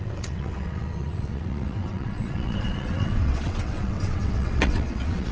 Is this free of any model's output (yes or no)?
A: no